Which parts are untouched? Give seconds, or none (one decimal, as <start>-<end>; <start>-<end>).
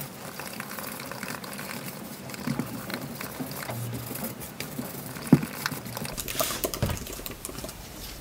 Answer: 2.9-4.3; 5.4-6.3